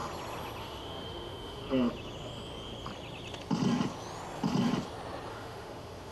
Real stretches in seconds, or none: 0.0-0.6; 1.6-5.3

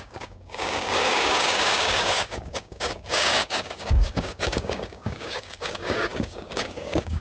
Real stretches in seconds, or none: none

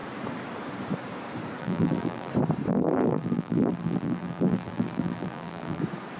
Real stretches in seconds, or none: 0.0-1.6; 2.3-2.7; 5.8-6.2

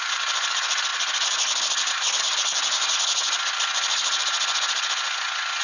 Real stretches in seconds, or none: none

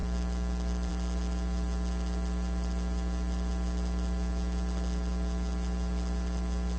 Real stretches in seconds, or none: 0.0-6.8

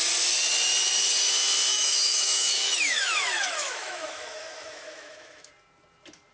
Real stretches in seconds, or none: 0.0-1.7; 5.5-6.3

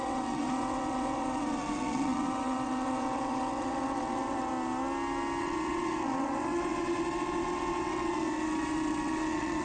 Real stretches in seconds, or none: 4.5-5.4

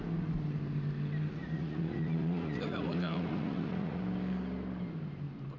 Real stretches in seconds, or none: 0.0-1.4; 4.0-5.6